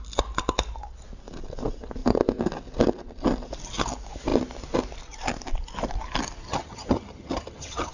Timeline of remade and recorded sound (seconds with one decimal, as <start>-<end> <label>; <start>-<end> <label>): 0.0-6.5 recorded; 6.5-7.9 remade